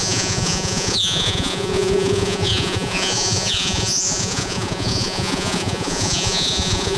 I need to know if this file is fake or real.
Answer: fake